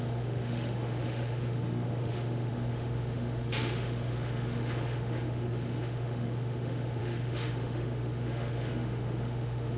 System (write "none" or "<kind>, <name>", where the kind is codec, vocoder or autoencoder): autoencoder, DAC-VAE